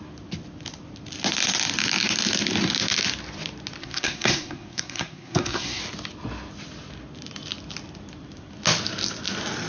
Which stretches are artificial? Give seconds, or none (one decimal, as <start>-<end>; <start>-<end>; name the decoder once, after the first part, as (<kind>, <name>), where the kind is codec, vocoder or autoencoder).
3.8-5.8 (codec, SNAC)